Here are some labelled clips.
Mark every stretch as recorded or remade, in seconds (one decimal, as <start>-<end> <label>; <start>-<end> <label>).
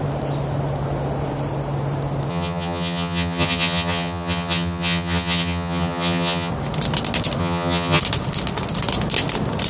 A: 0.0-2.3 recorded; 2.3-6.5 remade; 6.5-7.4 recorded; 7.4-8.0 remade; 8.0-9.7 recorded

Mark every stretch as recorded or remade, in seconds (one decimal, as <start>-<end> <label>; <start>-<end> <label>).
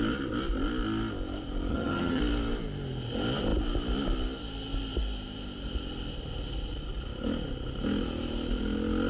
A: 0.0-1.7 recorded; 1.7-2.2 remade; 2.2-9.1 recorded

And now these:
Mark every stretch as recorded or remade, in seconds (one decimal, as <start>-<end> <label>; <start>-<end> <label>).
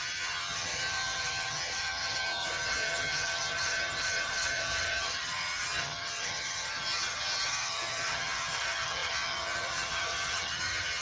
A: 0.0-11.0 remade